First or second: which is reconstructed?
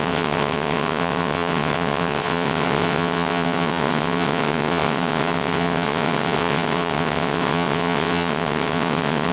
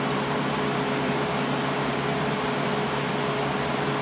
first